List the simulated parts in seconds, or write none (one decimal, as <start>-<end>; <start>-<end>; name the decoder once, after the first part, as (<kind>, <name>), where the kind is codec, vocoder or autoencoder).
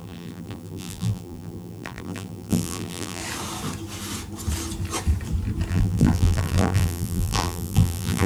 0.0-3.2 (vocoder, BigVGAN v2); 5.7-8.3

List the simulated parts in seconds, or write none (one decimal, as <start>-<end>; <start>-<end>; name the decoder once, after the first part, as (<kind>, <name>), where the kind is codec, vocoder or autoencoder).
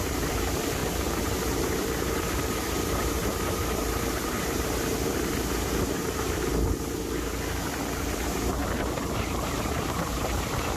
0.0-6.5 (vocoder, BigVGAN v2); 8.0-8.6; 9.4-10.8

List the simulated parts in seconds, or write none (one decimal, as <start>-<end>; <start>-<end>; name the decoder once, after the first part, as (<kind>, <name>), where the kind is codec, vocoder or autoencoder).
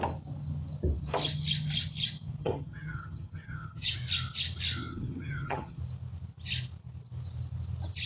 2.4-3.9 (vocoder, HiFi-GAN); 4.9-5.8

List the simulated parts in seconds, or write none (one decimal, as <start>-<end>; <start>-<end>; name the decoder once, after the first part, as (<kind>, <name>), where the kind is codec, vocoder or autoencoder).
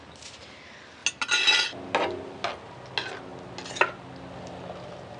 none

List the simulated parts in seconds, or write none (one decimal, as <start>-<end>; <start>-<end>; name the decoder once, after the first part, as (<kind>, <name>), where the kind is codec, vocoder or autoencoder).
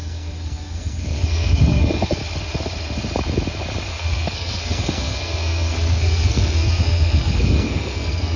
0.0-2.2 (codec, SNAC); 3.9-8.4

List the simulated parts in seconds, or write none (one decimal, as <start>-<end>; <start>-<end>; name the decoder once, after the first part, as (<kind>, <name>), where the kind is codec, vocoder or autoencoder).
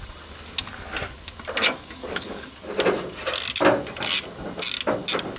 1.6-2.5 (codec, DAC)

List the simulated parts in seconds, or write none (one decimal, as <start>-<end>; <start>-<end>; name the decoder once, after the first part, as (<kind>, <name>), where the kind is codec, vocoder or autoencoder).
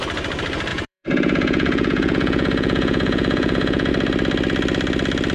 0.7-3.9 (vocoder, Vocos)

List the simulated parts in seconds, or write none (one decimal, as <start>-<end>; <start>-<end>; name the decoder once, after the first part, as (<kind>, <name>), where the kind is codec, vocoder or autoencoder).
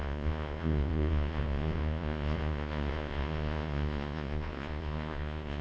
0.0-5.6 (vocoder, Vocos)